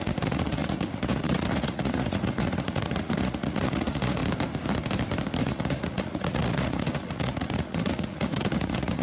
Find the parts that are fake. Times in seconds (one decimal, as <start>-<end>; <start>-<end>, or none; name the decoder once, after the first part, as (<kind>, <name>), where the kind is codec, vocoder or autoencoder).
0.0-4.2 (vocoder, Vocos); 5.4-9.0